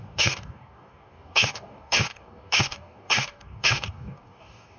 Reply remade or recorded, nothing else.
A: remade